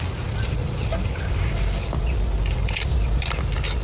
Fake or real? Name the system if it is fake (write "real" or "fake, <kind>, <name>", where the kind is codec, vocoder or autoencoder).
real